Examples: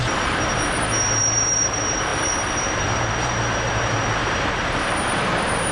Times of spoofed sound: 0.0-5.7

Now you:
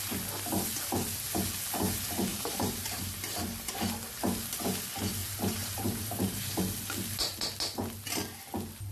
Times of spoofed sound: 2.3-3.0; 5.2-6.6